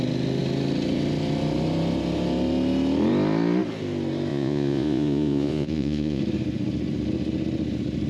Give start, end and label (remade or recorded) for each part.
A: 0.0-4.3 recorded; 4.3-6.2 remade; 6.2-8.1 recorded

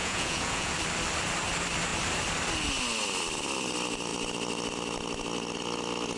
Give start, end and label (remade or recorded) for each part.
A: 0.0-0.7 remade; 0.7-6.2 recorded

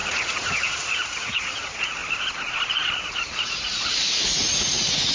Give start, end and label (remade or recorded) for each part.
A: 0.0-2.0 remade; 2.0-2.7 recorded; 2.7-5.1 remade

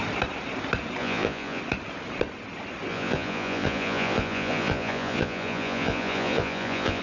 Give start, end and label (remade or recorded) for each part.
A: 0.0-1.0 recorded; 1.0-1.6 remade; 1.6-2.9 recorded; 2.9-7.0 remade

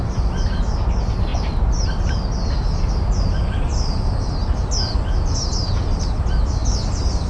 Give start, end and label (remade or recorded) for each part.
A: 0.0-7.3 recorded

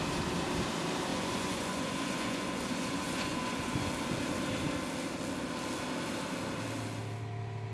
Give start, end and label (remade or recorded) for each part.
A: 0.0-1.1 recorded; 1.1-3.9 remade; 3.9-7.7 recorded